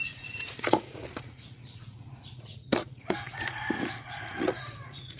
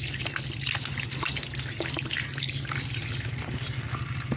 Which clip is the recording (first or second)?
second